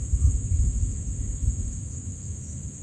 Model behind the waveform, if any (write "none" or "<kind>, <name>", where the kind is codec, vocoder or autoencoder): autoencoder, DAC-VAE